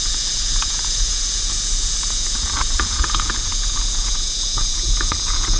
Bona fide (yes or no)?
no